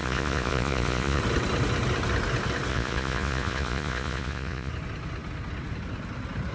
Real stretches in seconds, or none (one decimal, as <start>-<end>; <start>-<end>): 1.2-2.7; 4.7-6.5